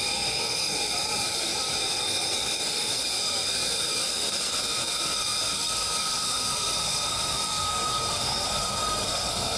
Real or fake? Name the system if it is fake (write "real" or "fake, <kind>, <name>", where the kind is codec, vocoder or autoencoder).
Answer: fake, codec, SNAC